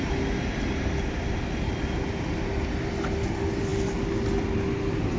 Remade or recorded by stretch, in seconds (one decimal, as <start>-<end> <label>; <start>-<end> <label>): 0.0-5.2 recorded